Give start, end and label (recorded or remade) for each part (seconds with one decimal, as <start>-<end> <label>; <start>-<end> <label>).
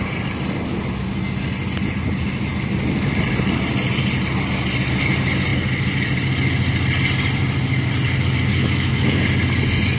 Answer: 0.0-8.5 recorded; 8.5-9.2 remade; 9.2-10.0 recorded